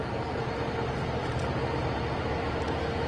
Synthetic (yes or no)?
no